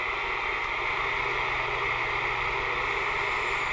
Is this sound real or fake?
real